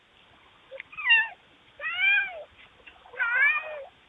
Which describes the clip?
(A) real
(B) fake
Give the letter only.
A